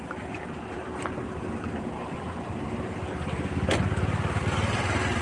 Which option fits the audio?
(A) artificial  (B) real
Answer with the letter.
A